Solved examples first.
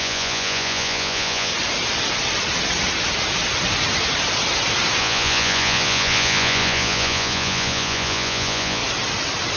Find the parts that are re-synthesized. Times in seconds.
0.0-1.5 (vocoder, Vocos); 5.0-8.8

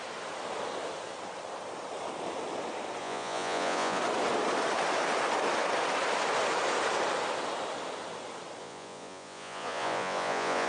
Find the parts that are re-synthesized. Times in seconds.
3.0-4.0 (vocoder, Vocos); 8.6-10.7